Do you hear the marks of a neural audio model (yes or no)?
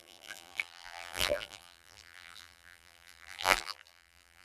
yes